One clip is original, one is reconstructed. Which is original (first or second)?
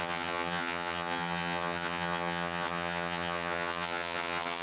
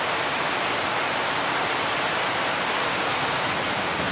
second